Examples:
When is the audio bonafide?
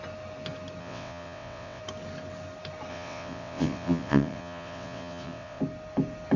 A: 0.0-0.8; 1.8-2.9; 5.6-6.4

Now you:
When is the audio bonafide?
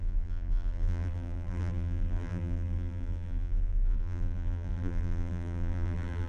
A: none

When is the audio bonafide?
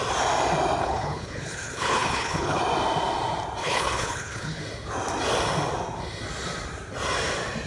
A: 0.0-0.8; 2.6-3.6; 4.6-7.7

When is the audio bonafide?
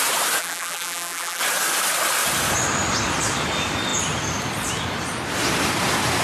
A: 0.0-0.4; 1.4-6.2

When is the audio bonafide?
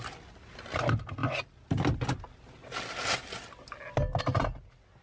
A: 0.0-5.0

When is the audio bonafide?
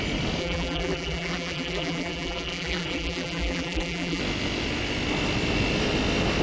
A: 0.0-0.4; 4.2-6.4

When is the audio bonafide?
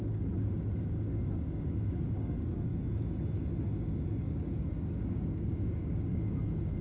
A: 2.7-4.2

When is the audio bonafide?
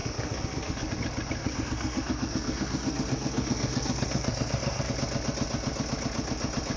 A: 0.9-1.4; 4.9-6.8